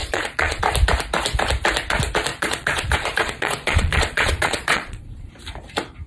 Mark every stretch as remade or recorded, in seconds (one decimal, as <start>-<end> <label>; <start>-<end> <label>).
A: 0.0-0.6 remade; 0.6-2.3 recorded; 2.3-5.3 remade; 5.3-6.1 recorded